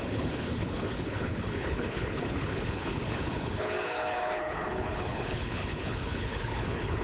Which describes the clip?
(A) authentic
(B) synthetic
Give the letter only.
B